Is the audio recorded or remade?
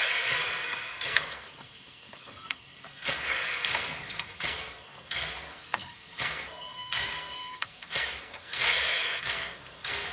remade